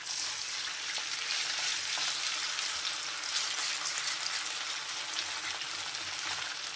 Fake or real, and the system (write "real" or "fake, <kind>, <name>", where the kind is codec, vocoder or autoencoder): real